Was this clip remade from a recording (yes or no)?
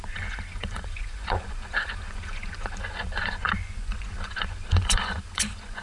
yes